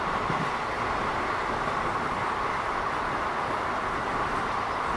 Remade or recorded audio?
recorded